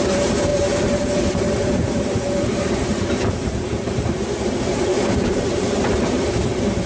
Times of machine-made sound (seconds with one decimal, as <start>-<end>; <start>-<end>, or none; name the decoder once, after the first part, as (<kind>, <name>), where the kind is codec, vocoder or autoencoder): 0.0-6.9 (vocoder, BigVGAN v2)